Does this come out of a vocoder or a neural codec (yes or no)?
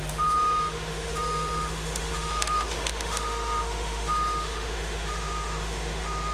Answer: yes